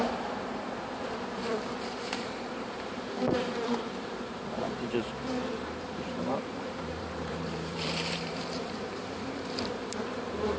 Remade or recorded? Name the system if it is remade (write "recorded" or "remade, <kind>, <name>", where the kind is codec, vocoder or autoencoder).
remade, vocoder, BigVGAN v2